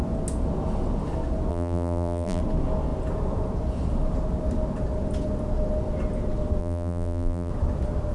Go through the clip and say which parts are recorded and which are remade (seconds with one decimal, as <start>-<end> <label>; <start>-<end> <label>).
0.0-1.5 recorded; 1.5-2.4 remade; 2.4-6.6 recorded; 6.6-7.5 remade; 7.5-8.1 recorded